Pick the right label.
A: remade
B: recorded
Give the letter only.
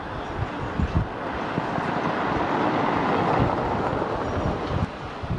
B